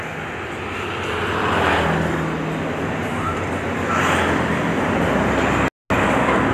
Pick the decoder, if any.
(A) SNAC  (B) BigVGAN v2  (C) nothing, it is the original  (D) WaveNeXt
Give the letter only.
C